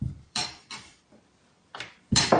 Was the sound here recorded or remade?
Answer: remade